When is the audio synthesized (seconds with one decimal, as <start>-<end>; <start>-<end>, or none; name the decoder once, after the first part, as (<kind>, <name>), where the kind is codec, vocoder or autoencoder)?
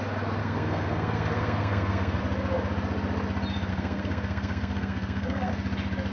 0.4-2.2 (codec, SNAC); 3.7-5.5